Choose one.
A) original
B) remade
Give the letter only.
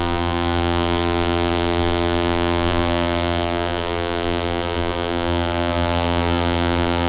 B